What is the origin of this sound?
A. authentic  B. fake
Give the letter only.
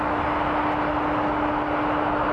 A